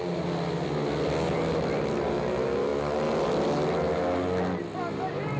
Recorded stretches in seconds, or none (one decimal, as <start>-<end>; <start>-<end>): 0.0-5.4